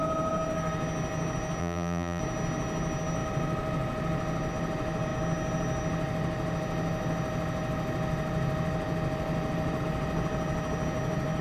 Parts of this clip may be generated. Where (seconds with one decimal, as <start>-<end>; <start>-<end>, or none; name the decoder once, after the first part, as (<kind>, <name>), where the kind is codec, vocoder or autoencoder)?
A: 1.6-2.2 (vocoder, BigVGAN v2)

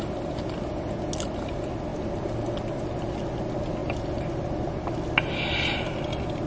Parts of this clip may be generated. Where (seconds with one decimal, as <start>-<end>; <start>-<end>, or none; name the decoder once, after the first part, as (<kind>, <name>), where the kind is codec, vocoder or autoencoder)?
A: 3.8-4.9 (vocoder, BigVGAN v2)

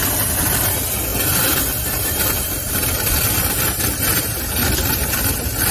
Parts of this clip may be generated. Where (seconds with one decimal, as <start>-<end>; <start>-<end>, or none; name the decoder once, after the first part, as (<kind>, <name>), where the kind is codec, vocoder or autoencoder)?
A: 1.1-4.5 (vocoder, BigVGAN v2)